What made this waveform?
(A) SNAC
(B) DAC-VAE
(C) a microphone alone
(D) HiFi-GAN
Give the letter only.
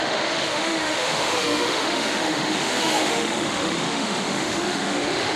B